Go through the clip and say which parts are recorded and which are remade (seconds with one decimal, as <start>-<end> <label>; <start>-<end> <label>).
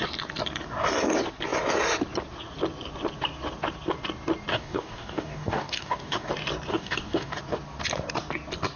0.0-4.5 recorded; 4.5-6.3 remade; 6.3-6.7 recorded; 6.7-7.4 remade; 7.4-8.8 recorded